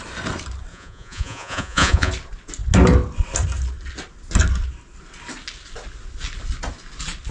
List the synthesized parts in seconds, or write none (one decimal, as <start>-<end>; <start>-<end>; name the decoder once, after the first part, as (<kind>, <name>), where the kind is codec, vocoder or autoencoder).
0.7-2.1 (vocoder, Vocos)